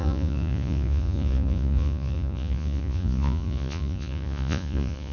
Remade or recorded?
remade